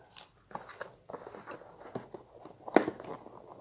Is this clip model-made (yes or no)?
no